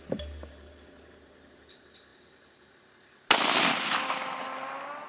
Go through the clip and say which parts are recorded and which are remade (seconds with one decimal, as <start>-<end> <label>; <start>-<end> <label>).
0.0-5.1 recorded